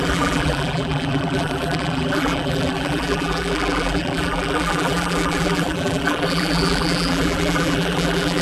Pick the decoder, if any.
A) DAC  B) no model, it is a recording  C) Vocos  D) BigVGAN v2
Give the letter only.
D